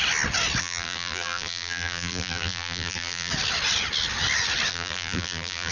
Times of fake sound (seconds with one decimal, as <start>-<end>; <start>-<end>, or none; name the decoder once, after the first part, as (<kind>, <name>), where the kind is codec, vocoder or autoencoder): 0.6-3.3 (vocoder, BigVGAN v2); 4.7-5.7